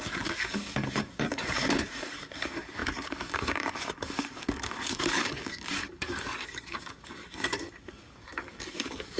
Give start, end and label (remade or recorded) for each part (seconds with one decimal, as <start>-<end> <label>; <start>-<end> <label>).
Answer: 0.0-9.2 remade